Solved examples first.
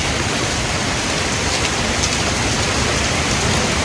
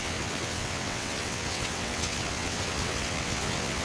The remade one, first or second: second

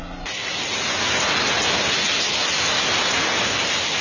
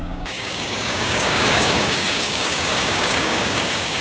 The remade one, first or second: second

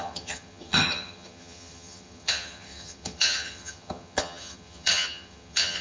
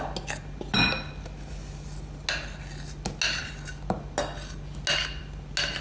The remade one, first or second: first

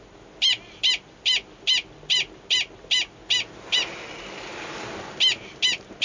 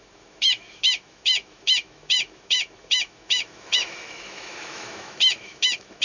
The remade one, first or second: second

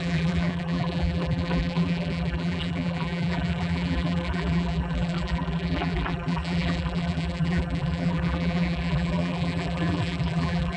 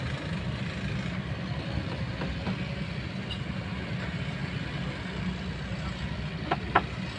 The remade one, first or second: first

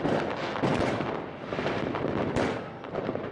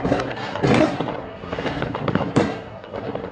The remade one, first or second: second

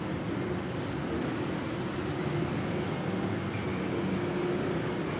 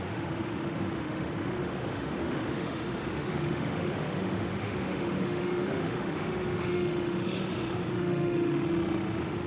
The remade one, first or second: second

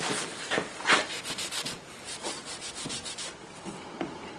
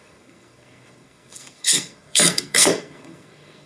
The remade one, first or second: second